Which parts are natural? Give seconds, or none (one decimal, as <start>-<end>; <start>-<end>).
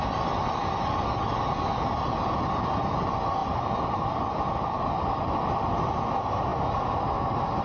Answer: 0.0-7.6